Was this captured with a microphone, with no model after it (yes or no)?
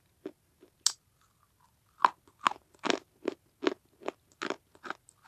yes